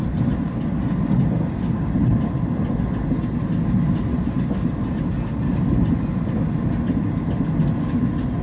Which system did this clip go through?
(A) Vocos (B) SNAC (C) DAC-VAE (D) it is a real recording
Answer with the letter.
D